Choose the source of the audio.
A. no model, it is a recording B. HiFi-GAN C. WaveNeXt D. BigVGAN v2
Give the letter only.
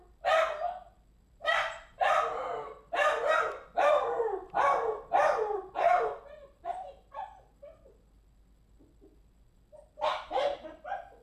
D